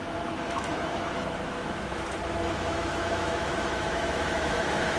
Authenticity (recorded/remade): remade